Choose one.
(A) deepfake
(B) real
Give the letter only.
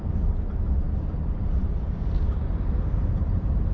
A